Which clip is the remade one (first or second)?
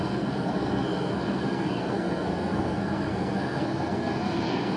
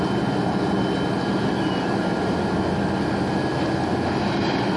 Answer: first